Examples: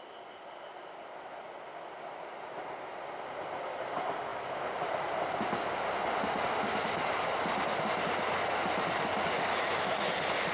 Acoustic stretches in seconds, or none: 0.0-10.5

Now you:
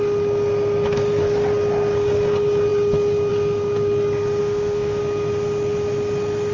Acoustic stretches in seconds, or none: 0.0-4.4; 5.0-6.5

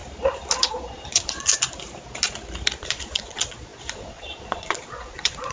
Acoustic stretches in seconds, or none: 0.0-0.7; 1.5-2.8

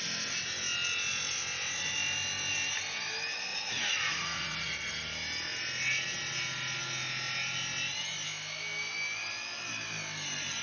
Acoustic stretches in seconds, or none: 0.0-3.5; 4.9-10.6